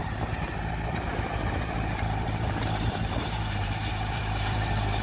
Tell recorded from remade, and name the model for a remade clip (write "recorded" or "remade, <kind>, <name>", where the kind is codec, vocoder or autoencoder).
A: remade, vocoder, BigVGAN v2